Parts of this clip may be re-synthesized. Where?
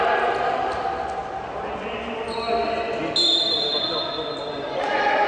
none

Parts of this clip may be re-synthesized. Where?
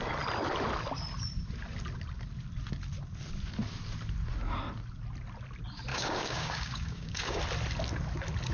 5.9-7.4 (codec, DAC)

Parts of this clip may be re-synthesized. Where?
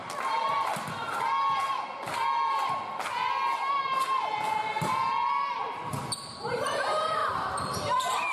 4.0-4.9 (vocoder, BigVGAN v2); 5.5-8.3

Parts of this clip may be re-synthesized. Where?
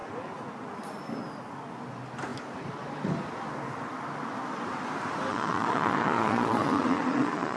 5.3-7.6 (vocoder, Vocos)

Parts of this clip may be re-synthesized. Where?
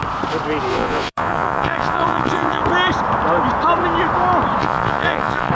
0.7-2.6 (vocoder, Vocos); 4.6-5.5